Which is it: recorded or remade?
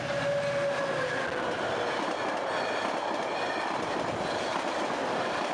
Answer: recorded